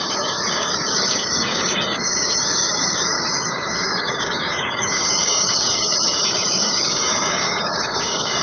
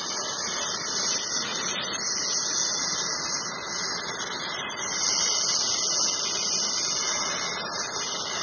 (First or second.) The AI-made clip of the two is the first